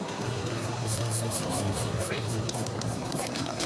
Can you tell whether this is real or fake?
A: fake